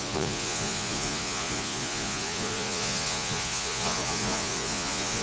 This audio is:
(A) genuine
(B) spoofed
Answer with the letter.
B